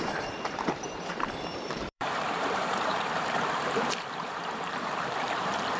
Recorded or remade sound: remade